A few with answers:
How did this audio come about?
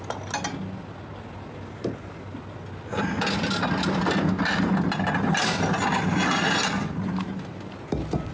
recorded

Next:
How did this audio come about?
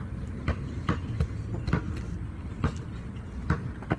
recorded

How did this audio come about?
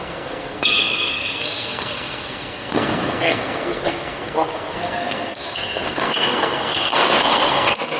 remade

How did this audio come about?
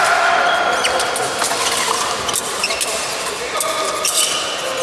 recorded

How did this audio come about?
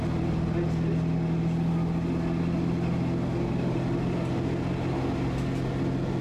recorded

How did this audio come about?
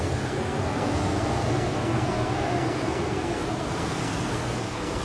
remade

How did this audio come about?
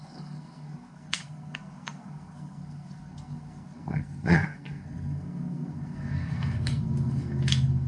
remade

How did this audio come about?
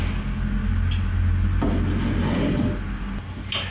recorded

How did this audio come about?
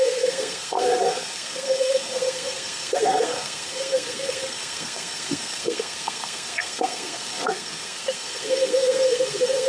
remade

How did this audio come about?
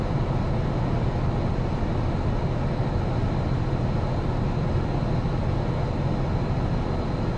recorded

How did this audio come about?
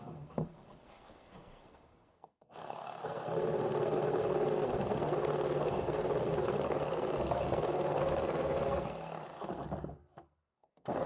remade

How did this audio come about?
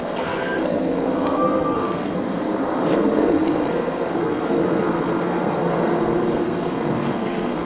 remade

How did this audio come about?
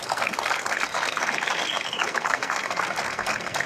remade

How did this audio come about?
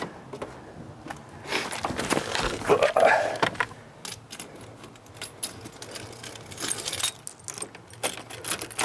recorded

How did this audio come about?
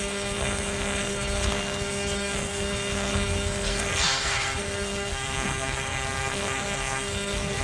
remade